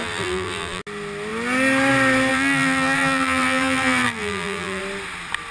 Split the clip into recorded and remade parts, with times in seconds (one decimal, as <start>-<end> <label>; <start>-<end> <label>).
0.0-0.8 remade; 0.8-2.3 recorded; 2.3-4.8 remade; 4.8-5.5 recorded